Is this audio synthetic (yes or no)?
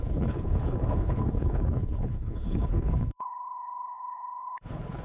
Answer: yes